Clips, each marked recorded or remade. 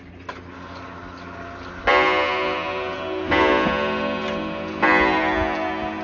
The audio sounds recorded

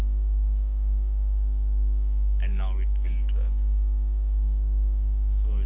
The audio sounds remade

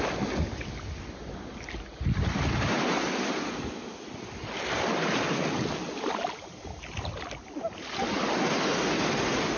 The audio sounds recorded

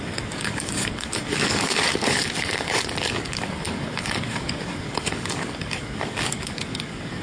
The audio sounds remade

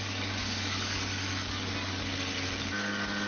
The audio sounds remade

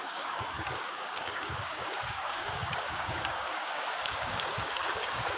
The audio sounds remade